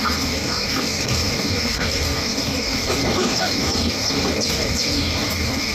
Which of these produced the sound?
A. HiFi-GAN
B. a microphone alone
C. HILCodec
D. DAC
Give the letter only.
D